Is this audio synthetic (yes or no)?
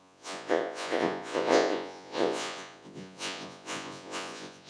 yes